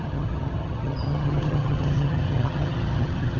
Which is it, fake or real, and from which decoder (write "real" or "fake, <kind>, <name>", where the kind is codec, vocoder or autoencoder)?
fake, vocoder, HiFi-GAN